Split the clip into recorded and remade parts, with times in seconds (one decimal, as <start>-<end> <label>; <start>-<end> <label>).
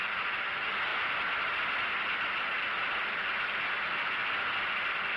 0.0-5.2 recorded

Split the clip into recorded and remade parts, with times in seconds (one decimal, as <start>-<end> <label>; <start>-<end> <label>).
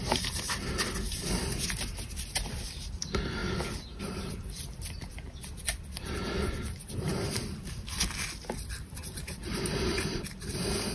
0.0-3.4 remade; 3.4-4.3 recorded; 4.3-10.9 remade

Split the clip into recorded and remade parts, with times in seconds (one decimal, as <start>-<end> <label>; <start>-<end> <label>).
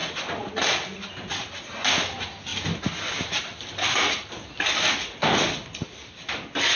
0.0-6.8 recorded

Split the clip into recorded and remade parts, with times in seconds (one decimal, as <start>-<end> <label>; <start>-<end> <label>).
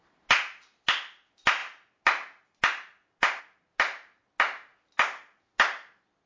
0.0-6.3 recorded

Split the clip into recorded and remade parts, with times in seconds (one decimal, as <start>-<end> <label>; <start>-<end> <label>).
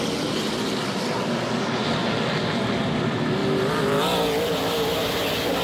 0.0-5.6 recorded